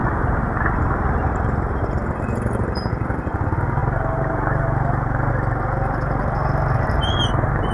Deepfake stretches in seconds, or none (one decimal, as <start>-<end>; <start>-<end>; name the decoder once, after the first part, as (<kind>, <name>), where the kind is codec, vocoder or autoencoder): 0.0-2.9 (vocoder, BigVGAN v2); 3.8-5.3